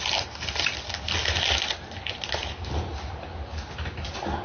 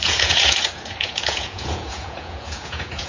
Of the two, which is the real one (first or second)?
first